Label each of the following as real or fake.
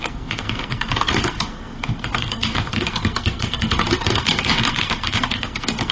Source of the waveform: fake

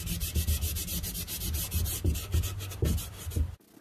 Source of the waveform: real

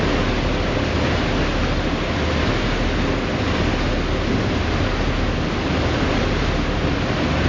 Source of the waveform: real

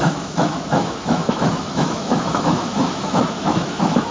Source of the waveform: fake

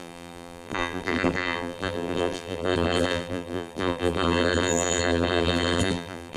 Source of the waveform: fake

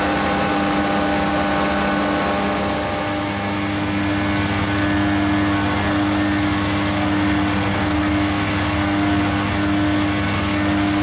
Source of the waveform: real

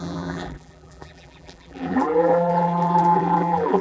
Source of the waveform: fake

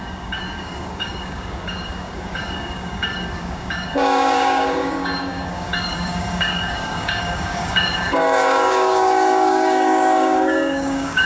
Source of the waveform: fake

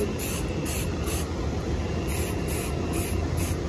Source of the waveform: real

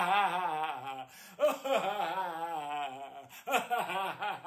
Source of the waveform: real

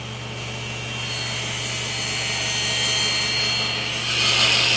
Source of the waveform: real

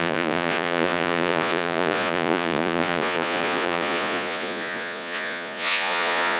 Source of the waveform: fake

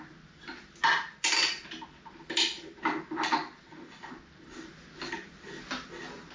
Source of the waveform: real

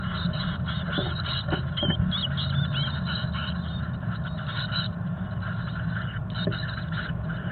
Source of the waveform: real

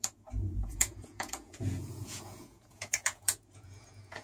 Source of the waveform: fake